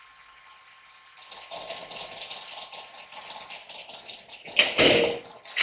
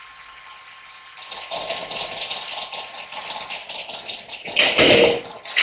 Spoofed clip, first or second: second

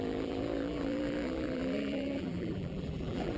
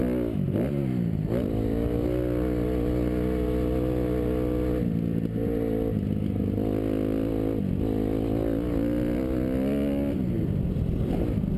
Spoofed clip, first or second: first